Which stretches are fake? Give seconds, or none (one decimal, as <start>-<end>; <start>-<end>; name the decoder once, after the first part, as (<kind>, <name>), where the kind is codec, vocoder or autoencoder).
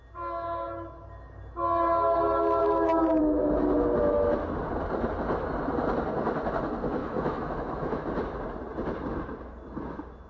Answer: 2.6-3.2 (autoencoder, DAC-VAE); 7.0-8.0